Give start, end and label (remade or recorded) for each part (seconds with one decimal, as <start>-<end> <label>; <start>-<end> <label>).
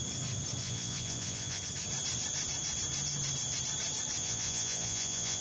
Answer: 0.0-0.6 recorded; 0.6-1.6 remade; 1.6-4.2 recorded; 4.2-5.4 remade